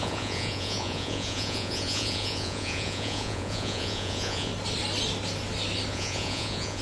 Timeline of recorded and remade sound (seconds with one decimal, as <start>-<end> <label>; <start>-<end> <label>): 0.0-4.5 remade; 4.5-5.9 recorded; 5.9-6.8 remade